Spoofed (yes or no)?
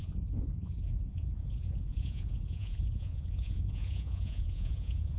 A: yes